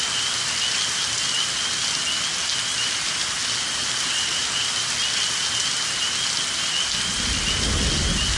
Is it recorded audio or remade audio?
recorded